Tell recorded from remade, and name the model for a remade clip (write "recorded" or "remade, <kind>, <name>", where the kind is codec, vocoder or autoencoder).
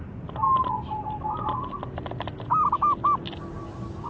recorded